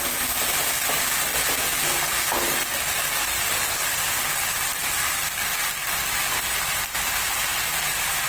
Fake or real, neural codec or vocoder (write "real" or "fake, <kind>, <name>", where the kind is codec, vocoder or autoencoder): real